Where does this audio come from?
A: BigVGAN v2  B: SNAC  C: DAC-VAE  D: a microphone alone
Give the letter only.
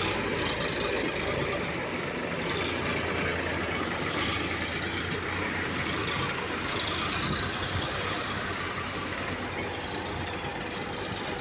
D